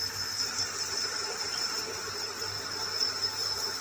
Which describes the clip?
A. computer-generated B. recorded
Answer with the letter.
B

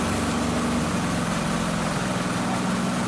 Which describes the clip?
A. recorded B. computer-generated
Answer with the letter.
A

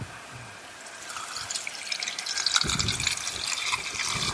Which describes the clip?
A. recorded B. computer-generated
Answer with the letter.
A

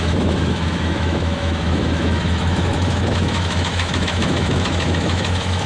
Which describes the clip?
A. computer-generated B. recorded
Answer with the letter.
A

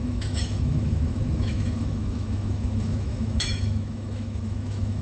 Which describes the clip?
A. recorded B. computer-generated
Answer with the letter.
B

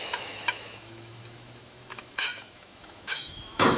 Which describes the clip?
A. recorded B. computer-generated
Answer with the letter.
B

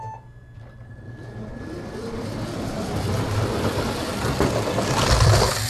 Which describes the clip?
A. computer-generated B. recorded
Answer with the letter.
B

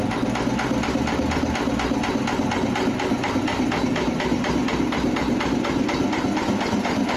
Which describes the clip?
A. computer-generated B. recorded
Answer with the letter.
B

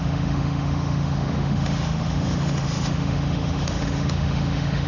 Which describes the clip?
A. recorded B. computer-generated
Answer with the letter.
B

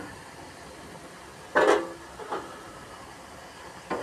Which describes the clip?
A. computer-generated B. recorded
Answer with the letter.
B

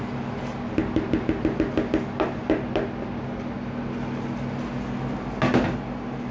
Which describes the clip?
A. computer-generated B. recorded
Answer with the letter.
B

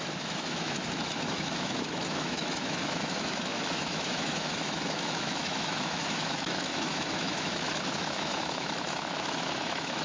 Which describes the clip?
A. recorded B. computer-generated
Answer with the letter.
B